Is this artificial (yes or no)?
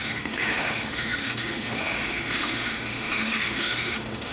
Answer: yes